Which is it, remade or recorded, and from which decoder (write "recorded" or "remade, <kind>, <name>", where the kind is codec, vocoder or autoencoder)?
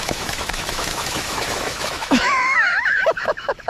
remade, autoencoder, DAC-VAE